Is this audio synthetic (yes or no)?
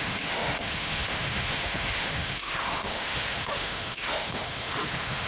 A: yes